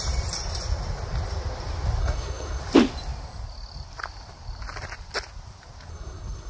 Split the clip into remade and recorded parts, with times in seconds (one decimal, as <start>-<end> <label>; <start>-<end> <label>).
0.0-2.0 recorded; 2.0-2.6 remade; 2.6-5.9 recorded; 5.9-6.5 remade